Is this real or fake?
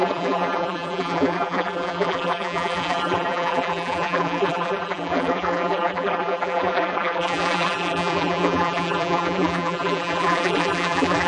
fake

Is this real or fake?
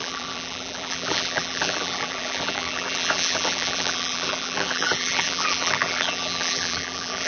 fake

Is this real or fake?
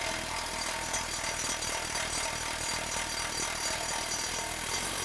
real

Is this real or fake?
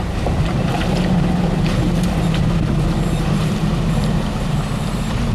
fake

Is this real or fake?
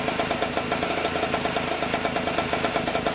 real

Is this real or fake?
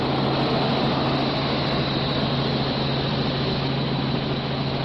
real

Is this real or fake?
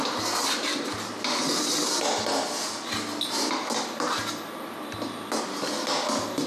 real